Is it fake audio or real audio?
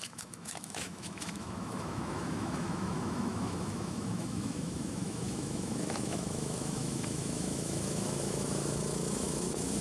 fake